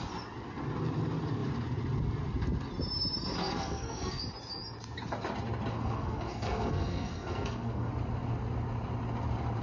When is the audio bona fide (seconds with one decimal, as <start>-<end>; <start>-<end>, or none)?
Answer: 0.0-3.4; 4.2-5.7; 7.9-9.6

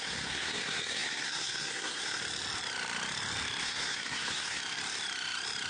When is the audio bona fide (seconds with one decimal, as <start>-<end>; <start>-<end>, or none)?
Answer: 2.2-3.6; 4.6-5.7

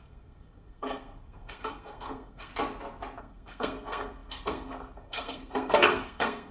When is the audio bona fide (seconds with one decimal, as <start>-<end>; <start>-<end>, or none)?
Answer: 2.5-3.2

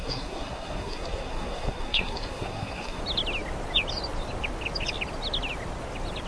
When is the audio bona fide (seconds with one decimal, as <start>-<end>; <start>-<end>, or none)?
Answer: 3.0-6.3

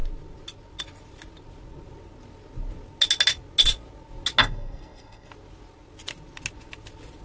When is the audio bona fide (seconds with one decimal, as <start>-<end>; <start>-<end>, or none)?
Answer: 0.0-4.4; 5.3-7.2